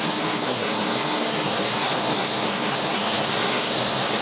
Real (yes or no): no